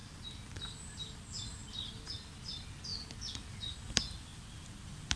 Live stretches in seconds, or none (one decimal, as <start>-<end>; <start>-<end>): 0.0-4.3